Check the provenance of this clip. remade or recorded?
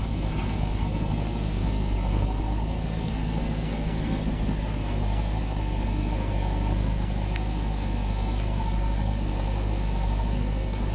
remade